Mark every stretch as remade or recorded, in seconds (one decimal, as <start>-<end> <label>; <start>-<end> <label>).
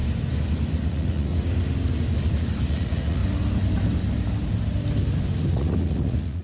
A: 0.0-0.9 recorded; 0.9-1.3 remade; 1.3-2.7 recorded; 2.7-3.2 remade; 3.2-5.5 recorded; 5.5-6.4 remade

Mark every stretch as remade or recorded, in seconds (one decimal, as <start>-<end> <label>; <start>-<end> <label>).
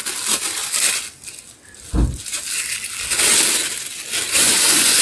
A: 0.0-4.4 recorded; 4.4-5.0 remade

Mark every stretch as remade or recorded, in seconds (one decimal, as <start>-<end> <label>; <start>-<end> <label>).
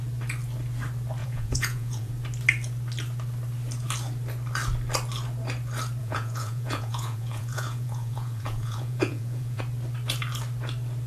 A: 0.0-1.2 recorded; 1.2-2.1 remade; 2.1-6.0 recorded; 6.0-9.6 remade; 9.6-11.1 recorded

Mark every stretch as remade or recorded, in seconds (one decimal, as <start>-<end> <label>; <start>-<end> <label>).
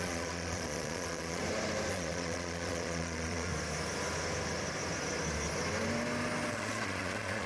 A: 0.0-1.4 remade; 1.4-1.9 recorded; 1.9-3.5 remade; 3.5-6.5 recorded; 6.5-7.5 remade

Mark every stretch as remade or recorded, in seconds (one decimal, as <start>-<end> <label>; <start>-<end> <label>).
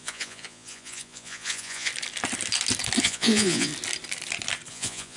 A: 0.0-1.9 remade; 1.9-3.0 recorded; 3.0-3.7 remade; 3.7-4.7 recorded; 4.7-5.2 remade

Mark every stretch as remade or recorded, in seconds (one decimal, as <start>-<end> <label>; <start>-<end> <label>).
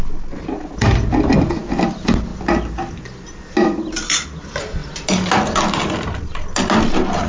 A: 0.0-7.3 recorded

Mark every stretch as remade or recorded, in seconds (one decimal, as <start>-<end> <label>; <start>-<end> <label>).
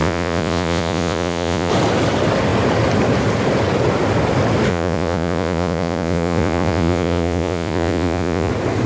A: 0.0-1.7 remade; 1.7-4.7 recorded; 4.7-8.5 remade; 8.5-8.9 recorded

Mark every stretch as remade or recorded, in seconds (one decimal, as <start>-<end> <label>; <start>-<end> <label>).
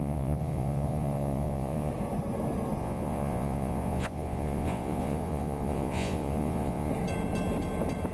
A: 0.0-1.9 remade; 1.9-2.8 recorded; 2.8-6.9 remade; 6.9-8.1 recorded